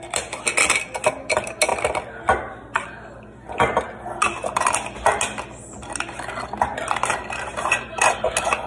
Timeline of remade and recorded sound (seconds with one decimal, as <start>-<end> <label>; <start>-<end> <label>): 0.0-6.7 recorded; 6.7-8.1 remade; 8.1-8.7 recorded